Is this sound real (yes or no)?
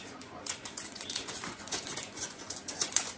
no